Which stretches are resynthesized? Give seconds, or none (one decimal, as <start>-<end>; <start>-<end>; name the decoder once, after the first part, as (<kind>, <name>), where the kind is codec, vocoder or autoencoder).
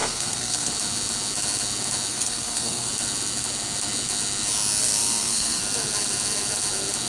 0.0-0.7 (codec, SNAC); 2.1-2.9; 4.8-5.6